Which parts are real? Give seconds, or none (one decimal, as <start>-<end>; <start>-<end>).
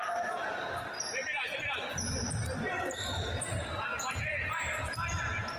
0.0-3.9